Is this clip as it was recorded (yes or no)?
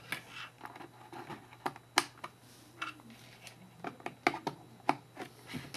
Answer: yes